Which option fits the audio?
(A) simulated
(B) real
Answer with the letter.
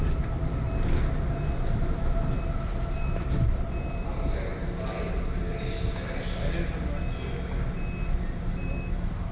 B